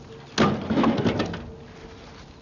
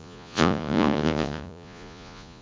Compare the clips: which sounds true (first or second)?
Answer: first